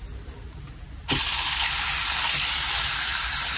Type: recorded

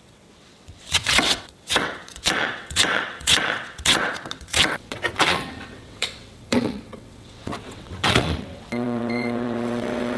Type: remade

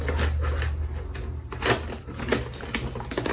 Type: recorded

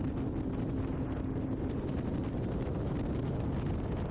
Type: recorded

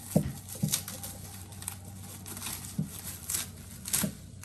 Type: recorded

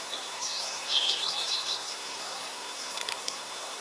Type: remade